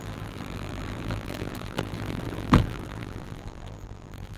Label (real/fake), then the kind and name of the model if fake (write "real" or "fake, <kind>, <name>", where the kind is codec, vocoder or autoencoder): fake, vocoder, BigVGAN v2